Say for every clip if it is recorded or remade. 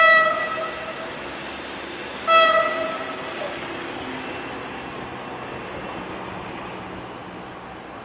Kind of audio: recorded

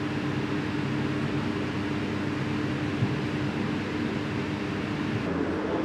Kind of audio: recorded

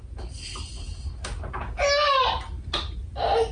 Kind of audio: recorded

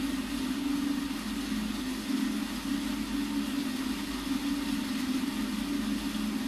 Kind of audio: recorded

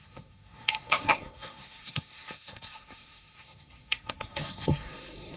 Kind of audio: remade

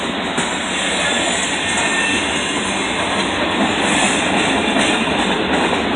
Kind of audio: recorded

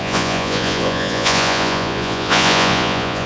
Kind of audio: remade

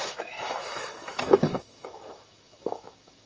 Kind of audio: remade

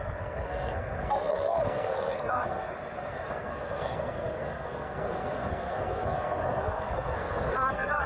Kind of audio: remade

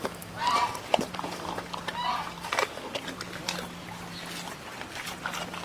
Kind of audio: recorded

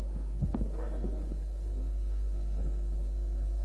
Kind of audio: remade